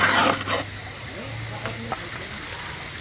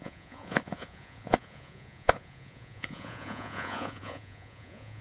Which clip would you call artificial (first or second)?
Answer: second